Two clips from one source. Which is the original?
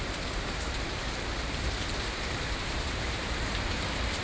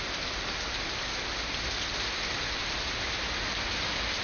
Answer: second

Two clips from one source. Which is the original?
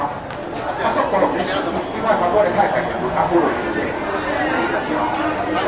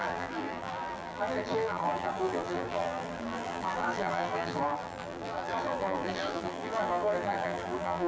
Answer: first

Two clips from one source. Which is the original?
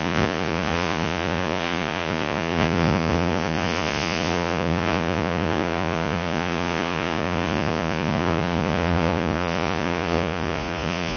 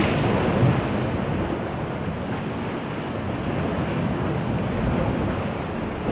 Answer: second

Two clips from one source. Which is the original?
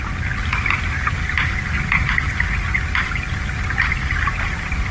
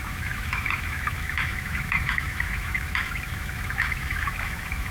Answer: first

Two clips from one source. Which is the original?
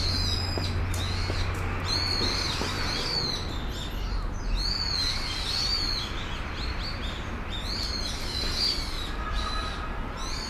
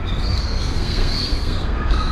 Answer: first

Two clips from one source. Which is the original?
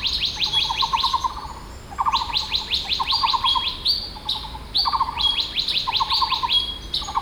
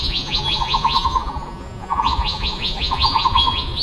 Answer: first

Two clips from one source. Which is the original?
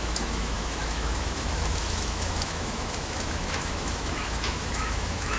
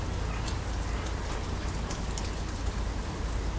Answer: second